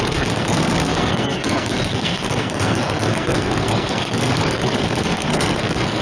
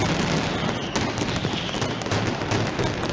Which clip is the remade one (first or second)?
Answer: first